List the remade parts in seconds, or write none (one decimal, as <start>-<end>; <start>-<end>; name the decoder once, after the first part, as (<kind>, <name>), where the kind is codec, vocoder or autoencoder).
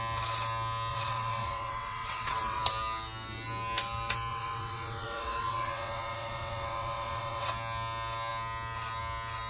0.9-2.6 (vocoder, WaveNeXt); 4.3-7.5